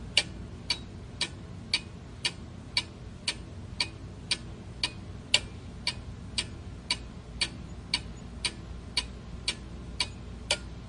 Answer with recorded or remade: recorded